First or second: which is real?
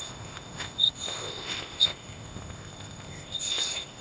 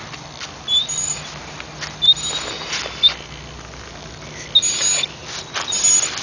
second